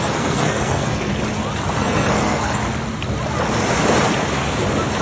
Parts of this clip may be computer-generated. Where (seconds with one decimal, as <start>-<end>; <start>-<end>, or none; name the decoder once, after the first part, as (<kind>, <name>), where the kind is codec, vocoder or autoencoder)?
0.0-1.1 (codec, SNAC); 1.8-2.6